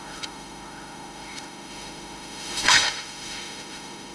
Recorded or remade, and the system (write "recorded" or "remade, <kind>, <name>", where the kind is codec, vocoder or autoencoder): remade, autoencoder, DAC-VAE